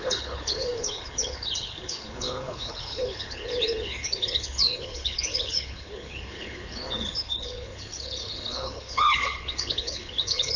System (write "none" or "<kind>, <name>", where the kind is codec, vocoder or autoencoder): codec, HILCodec